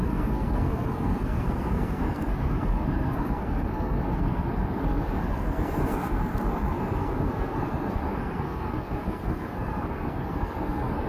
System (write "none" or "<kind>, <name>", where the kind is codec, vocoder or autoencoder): codec, SNAC